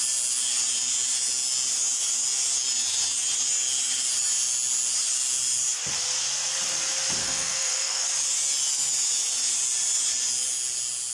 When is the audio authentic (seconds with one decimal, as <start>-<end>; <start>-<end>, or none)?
0.0-7.2; 8.0-11.1